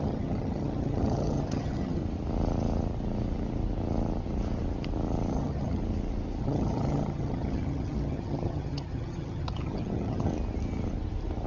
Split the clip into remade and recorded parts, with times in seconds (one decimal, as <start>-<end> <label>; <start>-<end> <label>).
0.0-2.0 remade; 2.0-5.3 recorded; 5.3-5.8 remade; 5.8-6.4 recorded; 6.4-10.3 remade; 10.3-11.5 recorded